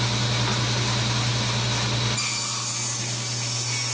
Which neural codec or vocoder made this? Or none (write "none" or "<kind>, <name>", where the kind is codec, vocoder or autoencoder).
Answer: none